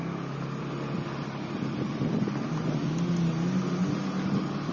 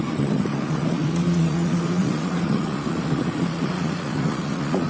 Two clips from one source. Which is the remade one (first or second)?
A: second